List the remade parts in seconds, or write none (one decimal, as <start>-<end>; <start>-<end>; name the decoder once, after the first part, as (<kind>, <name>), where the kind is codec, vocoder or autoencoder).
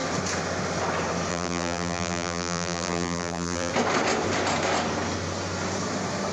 1.3-3.7 (vocoder, BigVGAN v2)